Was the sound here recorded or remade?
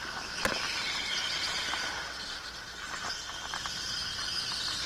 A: recorded